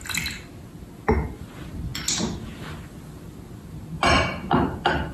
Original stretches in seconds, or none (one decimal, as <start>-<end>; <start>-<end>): 0.0-5.1